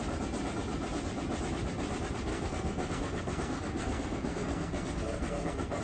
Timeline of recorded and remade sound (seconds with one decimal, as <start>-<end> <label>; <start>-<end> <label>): 0.0-2.3 recorded; 2.3-5.8 remade